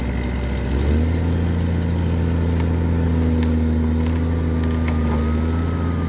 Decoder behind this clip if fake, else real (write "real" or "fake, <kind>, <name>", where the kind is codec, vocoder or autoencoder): real